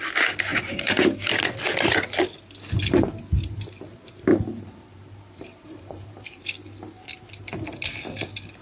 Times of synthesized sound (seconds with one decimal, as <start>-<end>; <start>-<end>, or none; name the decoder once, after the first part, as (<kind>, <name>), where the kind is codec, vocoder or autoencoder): 0.5-1.4 (vocoder, BigVGAN v2); 3.9-6.5